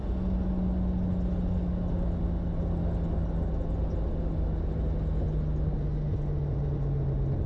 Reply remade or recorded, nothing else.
recorded